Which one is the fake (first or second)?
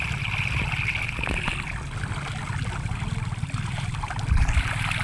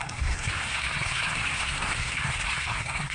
second